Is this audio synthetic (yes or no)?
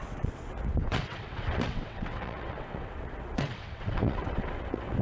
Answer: yes